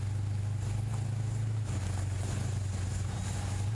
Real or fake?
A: real